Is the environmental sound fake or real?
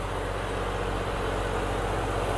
real